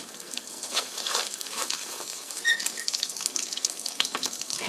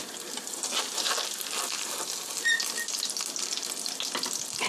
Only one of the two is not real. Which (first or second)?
first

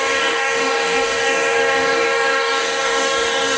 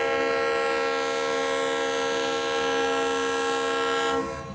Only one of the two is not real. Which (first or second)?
first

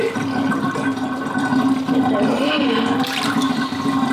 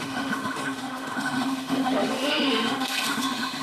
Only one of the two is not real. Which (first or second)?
second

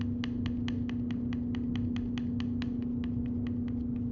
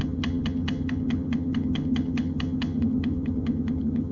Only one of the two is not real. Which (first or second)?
second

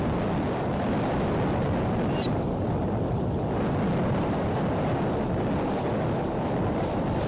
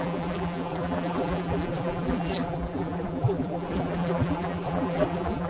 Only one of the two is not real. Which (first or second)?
second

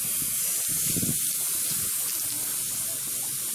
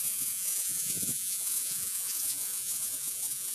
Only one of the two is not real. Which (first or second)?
second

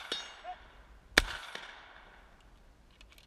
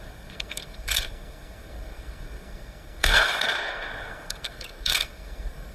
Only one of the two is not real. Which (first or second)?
second